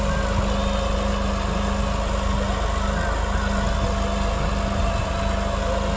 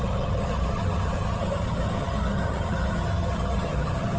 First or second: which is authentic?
first